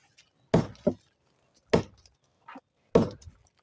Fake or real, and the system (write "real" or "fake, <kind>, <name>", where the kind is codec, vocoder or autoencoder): real